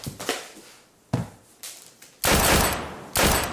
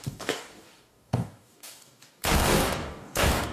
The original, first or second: first